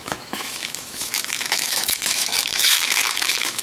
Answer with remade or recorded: remade